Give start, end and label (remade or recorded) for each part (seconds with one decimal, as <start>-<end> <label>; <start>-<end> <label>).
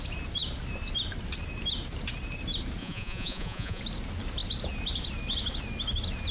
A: 0.0-2.8 recorded; 2.8-3.8 remade; 3.8-6.3 recorded